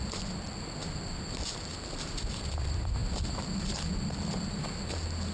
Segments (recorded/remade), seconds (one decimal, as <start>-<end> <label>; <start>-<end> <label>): 0.0-5.3 recorded